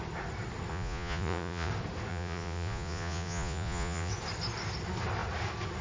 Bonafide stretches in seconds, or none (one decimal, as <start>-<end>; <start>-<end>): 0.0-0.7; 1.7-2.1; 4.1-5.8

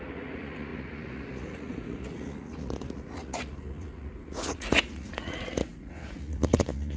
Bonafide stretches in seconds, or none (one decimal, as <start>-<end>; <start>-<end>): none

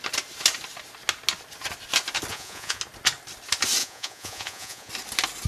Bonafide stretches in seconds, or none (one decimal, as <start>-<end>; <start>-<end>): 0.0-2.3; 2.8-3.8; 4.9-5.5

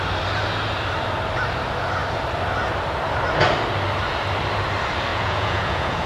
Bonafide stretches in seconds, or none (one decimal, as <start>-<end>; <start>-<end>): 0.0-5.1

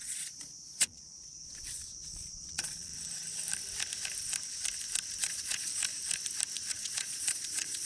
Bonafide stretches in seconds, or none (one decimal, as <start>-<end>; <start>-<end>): 2.9-5.2; 5.7-6.7

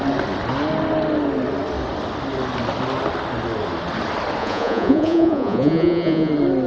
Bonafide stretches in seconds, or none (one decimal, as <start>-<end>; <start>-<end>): 0.0-4.4; 6.3-6.7